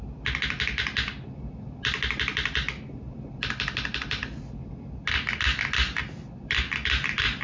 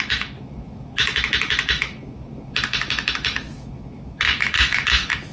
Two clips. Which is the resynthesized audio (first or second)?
second